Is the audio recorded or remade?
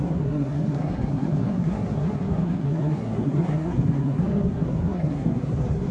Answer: remade